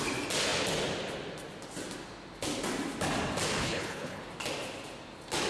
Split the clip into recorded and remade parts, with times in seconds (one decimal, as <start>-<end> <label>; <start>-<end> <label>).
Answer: 0.0-3.6 recorded; 3.6-4.2 remade; 4.2-5.5 recorded

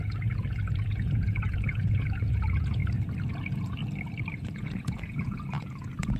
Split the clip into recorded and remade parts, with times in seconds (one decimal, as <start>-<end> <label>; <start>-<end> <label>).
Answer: 0.0-2.8 remade; 2.8-3.3 recorded; 3.3-3.8 remade; 3.8-4.3 recorded; 4.3-6.2 remade